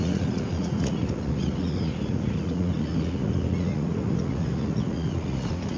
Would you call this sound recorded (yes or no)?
no